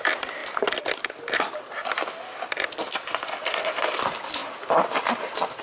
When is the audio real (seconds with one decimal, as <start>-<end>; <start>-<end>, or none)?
0.4-3.8; 4.4-5.6